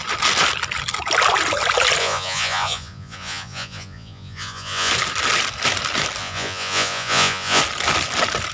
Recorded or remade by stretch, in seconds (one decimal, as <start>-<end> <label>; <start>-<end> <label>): 0.0-2.0 recorded; 2.0-4.9 remade; 4.9-6.2 recorded; 6.2-7.6 remade; 7.6-8.5 recorded